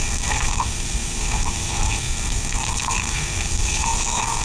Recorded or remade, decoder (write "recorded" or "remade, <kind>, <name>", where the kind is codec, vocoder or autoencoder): remade, codec, SNAC